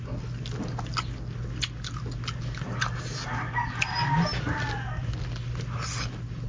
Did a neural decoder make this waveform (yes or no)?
no